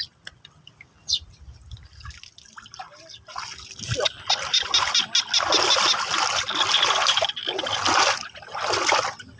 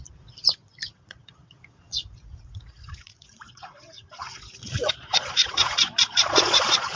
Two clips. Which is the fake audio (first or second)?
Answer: second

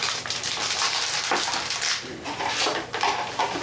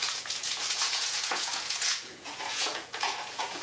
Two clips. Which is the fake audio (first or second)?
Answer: second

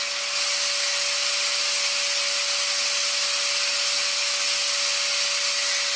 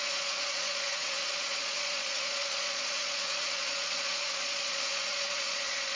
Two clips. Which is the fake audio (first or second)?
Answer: second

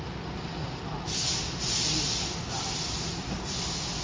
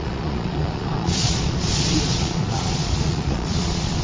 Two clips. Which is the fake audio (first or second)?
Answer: second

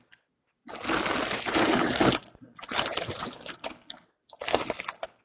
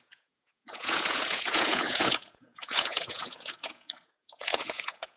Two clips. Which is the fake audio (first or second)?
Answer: second